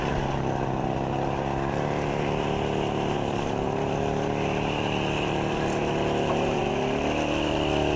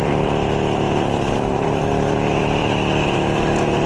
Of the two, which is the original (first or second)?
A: first